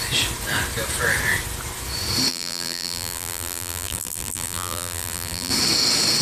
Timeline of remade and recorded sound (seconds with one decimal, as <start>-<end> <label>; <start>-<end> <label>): 0.0-2.3 recorded; 2.3-5.5 remade; 5.5-6.2 recorded